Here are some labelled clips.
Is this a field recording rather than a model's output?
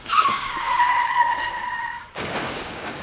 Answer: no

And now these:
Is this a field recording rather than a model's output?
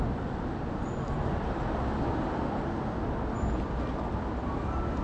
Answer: yes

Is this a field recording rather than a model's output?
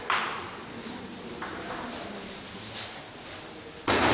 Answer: yes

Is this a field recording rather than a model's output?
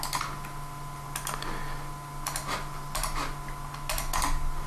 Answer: yes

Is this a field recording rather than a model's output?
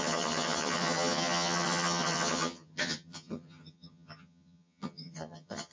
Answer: no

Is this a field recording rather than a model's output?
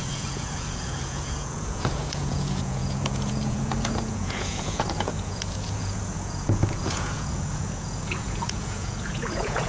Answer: no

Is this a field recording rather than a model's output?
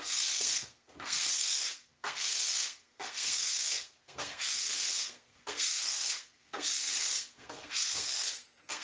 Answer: no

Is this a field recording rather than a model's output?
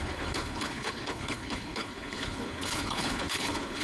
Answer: no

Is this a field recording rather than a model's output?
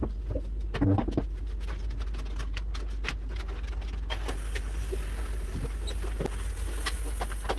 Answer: yes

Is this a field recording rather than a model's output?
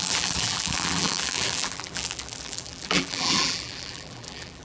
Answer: no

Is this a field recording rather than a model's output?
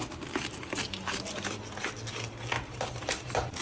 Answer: yes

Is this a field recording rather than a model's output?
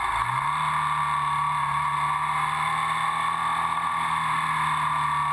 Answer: yes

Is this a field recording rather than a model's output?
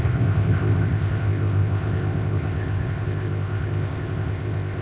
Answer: no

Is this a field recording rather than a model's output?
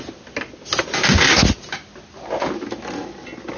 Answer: yes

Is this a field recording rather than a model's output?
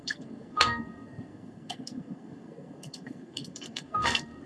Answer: no